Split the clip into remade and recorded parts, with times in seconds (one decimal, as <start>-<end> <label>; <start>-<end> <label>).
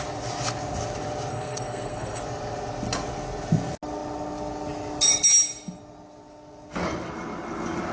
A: 0.0-1.3 recorded; 1.3-2.2 remade; 2.2-7.9 recorded